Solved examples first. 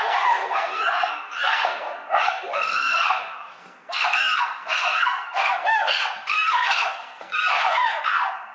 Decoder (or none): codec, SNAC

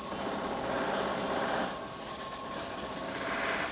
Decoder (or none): none